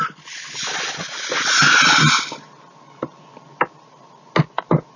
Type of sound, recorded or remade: recorded